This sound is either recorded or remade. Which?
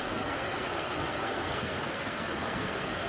remade